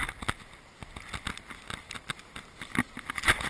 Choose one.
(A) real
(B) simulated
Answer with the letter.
A